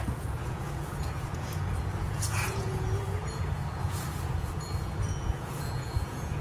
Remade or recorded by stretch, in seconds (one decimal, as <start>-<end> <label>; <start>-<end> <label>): 0.0-6.4 remade